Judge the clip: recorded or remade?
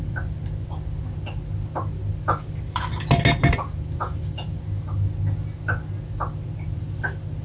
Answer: recorded